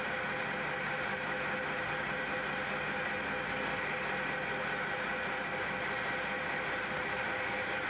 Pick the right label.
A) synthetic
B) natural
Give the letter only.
B